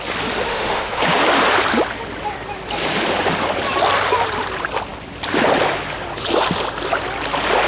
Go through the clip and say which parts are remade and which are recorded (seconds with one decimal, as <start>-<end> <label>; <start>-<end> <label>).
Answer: 0.0-0.5 recorded; 0.5-1.0 remade; 1.0-7.7 recorded